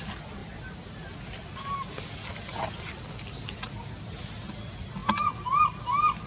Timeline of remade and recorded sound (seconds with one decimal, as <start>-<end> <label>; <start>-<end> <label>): 0.0-6.3 recorded